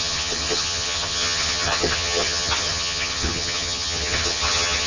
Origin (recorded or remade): remade